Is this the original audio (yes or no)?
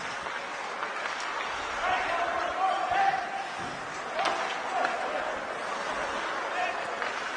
yes